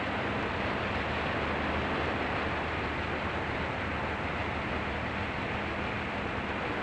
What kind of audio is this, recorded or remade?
recorded